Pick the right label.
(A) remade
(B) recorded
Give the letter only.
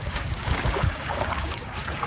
A